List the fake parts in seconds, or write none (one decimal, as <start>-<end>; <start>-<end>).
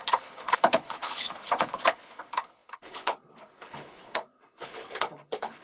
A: 0.0-5.6